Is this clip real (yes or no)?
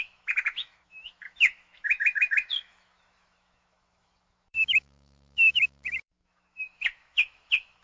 no